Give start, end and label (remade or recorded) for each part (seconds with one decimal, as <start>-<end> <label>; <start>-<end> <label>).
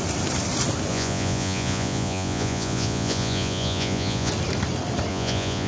0.0-0.9 recorded; 0.9-4.3 remade; 4.3-5.1 recorded; 5.1-5.7 remade